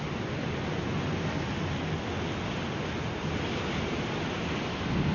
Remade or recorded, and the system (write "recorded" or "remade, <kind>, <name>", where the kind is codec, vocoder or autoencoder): recorded